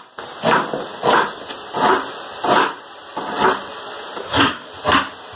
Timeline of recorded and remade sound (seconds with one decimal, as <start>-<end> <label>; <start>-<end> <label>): 0.0-4.2 recorded; 4.2-4.7 remade; 4.7-5.4 recorded